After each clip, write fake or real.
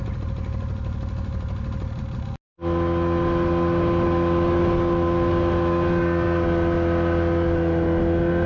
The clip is real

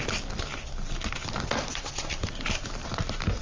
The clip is real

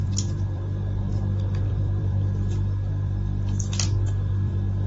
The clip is fake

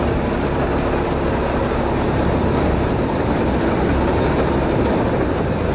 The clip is real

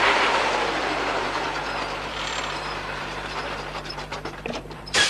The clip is fake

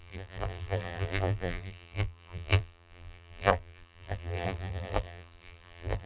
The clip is fake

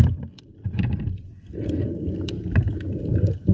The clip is fake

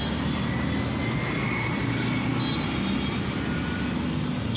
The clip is real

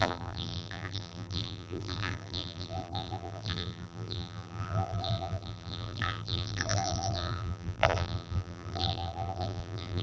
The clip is fake